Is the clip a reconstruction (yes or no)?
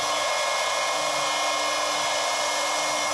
no